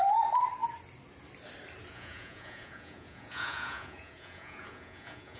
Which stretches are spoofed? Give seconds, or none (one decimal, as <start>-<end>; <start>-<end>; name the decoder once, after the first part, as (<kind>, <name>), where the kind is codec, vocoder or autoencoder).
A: 1.9-5.4 (vocoder, Vocos)